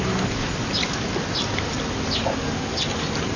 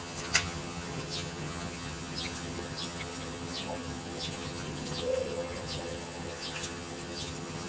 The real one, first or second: first